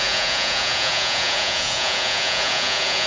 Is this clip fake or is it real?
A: fake